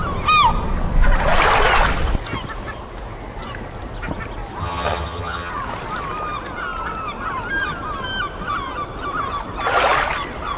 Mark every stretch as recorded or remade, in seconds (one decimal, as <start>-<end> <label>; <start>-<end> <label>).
0.0-4.6 recorded; 4.6-5.5 remade; 5.5-10.6 recorded